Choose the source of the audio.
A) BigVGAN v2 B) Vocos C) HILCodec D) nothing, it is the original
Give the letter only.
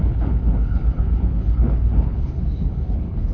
C